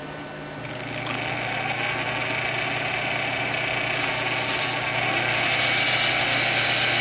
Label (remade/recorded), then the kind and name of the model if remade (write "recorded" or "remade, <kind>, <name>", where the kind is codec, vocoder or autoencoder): recorded